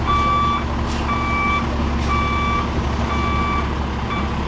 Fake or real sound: real